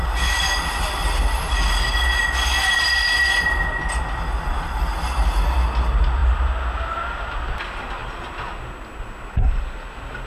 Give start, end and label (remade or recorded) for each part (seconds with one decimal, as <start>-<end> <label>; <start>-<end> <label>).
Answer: 0.0-10.3 recorded